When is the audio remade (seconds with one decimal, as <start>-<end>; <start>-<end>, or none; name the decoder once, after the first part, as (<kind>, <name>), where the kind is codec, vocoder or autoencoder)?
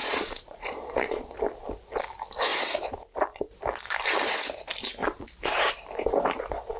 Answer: 0.0-1.3 (vocoder, Vocos); 5.0-5.6